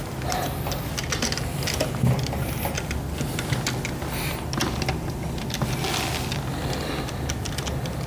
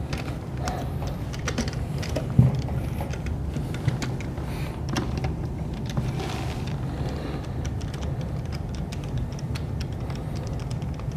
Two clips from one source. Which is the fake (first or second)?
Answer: second